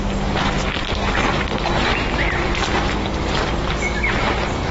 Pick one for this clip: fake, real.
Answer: real